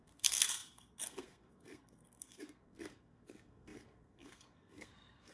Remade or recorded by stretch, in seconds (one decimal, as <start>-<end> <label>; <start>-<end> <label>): 0.0-5.3 remade

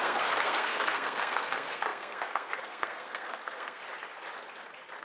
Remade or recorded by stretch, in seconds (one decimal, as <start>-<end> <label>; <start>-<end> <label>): 0.0-3.8 remade; 3.8-5.0 recorded

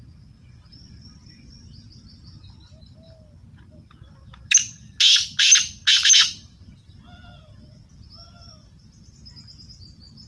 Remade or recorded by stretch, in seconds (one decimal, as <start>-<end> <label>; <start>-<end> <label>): 0.0-10.3 recorded

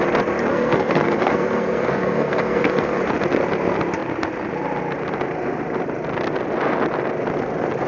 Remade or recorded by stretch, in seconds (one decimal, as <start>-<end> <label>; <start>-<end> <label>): 0.0-0.5 recorded; 0.5-3.0 remade; 3.0-7.9 recorded

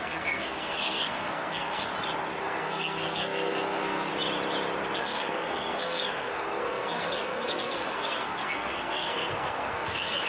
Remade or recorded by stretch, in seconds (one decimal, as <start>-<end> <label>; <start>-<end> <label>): 0.0-1.9 remade; 1.9-2.4 recorded; 2.4-4.1 remade; 4.1-5.0 recorded; 5.0-10.3 remade

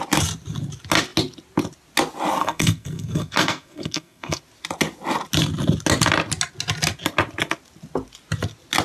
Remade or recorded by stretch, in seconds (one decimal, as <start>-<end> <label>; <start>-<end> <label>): 0.0-2.4 recorded; 2.4-4.4 remade; 4.4-8.8 recorded

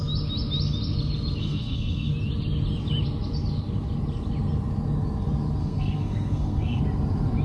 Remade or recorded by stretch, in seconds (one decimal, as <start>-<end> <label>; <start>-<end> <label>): 0.0-1.4 recorded; 1.4-2.1 remade; 2.1-5.6 recorded; 5.6-6.8 remade; 6.8-7.4 recorded